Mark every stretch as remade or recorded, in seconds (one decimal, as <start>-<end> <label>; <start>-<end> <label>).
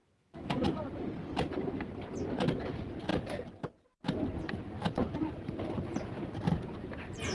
0.0-0.8 remade; 0.8-7.3 recorded